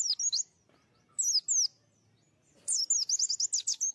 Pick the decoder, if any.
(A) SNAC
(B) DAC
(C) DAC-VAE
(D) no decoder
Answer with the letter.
D